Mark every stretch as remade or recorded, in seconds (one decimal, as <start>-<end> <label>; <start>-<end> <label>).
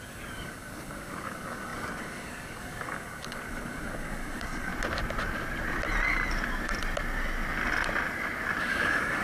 0.0-4.7 remade; 4.7-8.6 recorded; 8.6-9.2 remade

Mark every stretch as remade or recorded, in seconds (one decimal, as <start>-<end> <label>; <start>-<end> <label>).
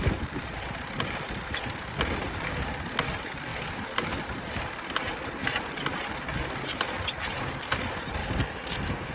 0.0-8.2 recorded; 8.2-9.1 remade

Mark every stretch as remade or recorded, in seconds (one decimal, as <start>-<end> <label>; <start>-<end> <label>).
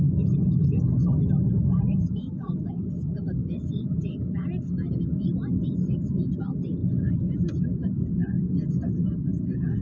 0.0-9.8 recorded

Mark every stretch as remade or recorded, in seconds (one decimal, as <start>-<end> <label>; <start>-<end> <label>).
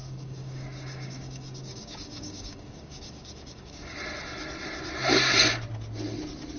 0.0-4.0 remade; 4.0-6.6 recorded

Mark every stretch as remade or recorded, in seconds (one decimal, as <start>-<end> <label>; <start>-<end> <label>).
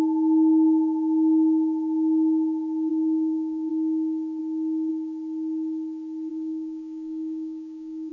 0.0-2.9 recorded; 2.9-3.7 remade; 3.7-6.3 recorded; 6.3-8.1 remade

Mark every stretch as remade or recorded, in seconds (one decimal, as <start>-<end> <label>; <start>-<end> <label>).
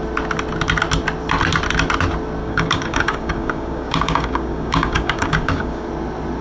0.0-2.4 recorded; 2.4-5.9 remade; 5.9-6.4 recorded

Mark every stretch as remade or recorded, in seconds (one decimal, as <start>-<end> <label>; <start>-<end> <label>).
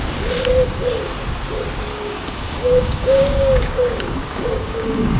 0.0-1.9 recorded; 1.9-5.2 remade